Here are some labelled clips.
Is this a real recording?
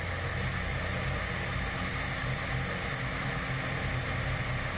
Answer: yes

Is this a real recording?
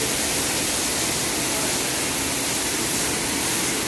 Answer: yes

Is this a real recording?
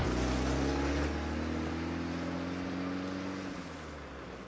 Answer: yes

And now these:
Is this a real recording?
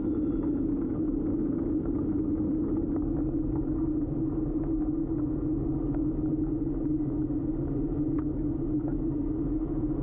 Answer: yes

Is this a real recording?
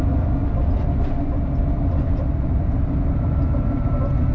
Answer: yes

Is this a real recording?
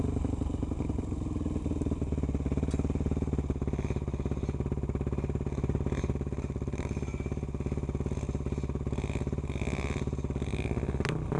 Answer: yes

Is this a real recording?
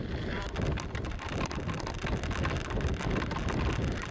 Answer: yes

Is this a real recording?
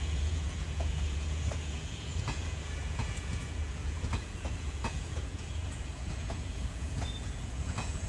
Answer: no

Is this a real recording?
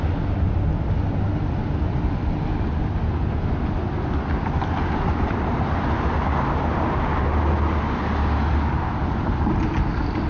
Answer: yes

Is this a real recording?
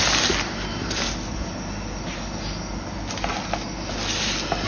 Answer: yes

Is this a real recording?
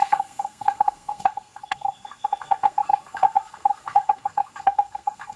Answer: no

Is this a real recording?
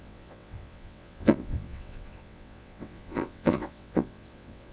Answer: no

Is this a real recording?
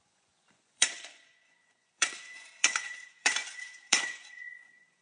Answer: no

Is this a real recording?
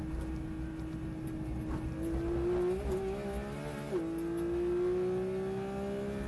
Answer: yes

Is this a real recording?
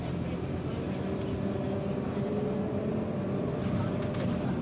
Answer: yes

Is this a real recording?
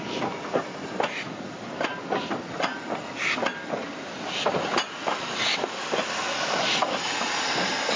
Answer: yes